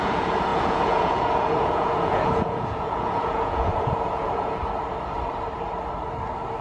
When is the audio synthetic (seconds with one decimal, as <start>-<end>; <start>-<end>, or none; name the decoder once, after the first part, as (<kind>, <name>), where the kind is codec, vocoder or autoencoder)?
0.0-4.6 (vocoder, Vocos)